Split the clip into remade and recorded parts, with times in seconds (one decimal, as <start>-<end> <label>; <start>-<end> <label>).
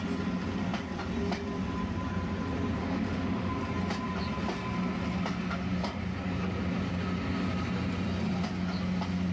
0.0-2.8 recorded; 2.8-3.5 remade; 3.5-9.3 recorded